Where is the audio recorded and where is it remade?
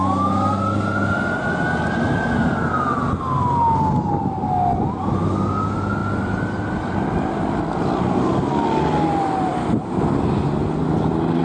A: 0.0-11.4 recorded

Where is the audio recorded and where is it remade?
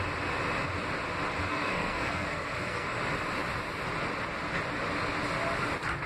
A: 0.0-1.5 recorded; 1.5-2.9 remade; 2.9-6.1 recorded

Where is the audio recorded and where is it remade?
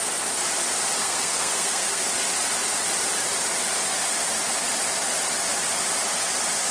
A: 0.0-1.0 recorded; 1.0-2.0 remade; 2.0-6.7 recorded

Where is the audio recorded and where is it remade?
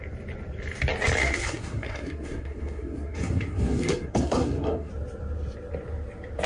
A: 0.0-1.2 recorded; 1.2-4.9 remade; 4.9-6.5 recorded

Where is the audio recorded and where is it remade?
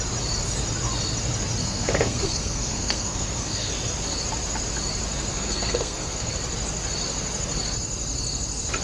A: 0.0-1.6 recorded; 1.6-3.7 remade; 3.7-5.3 recorded; 5.3-6.3 remade; 6.3-8.8 recorded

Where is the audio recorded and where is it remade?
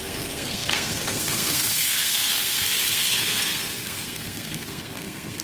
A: 0.0-5.4 remade